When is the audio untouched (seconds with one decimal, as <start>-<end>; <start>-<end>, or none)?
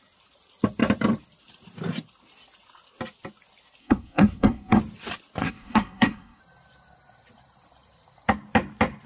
0.0-3.8; 4.8-5.4; 6.4-9.1